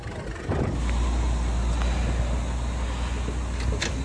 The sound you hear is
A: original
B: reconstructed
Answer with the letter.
A